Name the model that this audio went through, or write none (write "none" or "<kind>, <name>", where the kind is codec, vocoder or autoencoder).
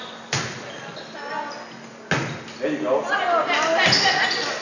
none